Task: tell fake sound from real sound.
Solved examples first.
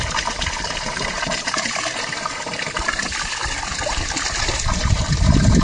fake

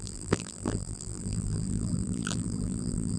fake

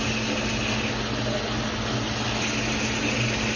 real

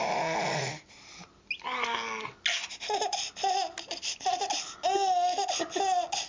real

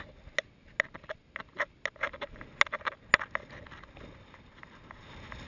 real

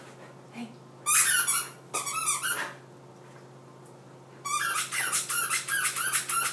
real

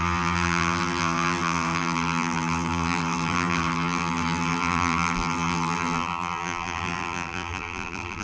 fake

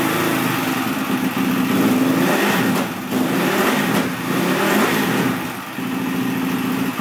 real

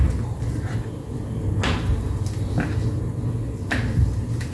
real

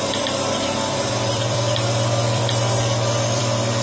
fake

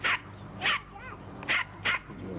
real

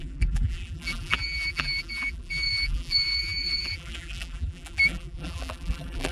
fake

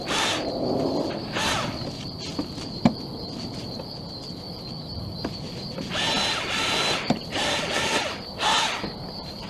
real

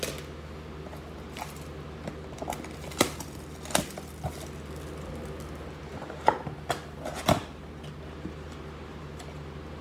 real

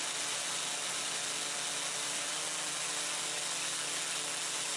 real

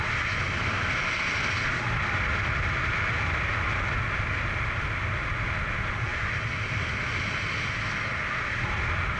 real